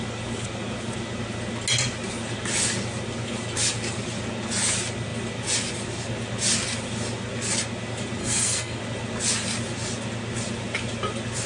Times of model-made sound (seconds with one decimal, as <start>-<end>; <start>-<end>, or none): 8.2-8.8